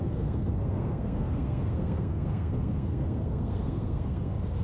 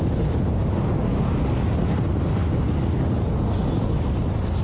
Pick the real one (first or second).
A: second